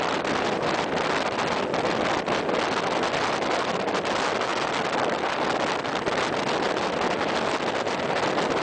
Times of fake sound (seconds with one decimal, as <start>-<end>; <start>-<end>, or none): none